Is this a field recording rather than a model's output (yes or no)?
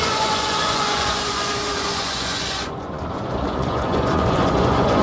no